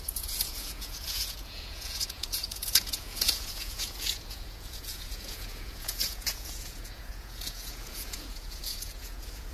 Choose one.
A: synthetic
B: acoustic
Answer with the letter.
A